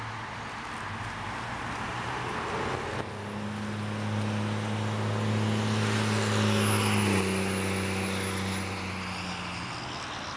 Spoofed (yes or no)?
no